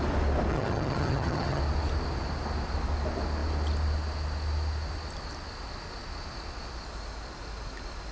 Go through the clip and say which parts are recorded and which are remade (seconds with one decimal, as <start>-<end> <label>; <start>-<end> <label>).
0.0-0.5 recorded; 0.5-1.6 remade; 1.6-8.1 recorded